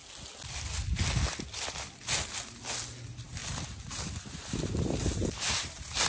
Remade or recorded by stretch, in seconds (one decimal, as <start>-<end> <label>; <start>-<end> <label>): 0.0-3.4 recorded; 3.4-6.1 remade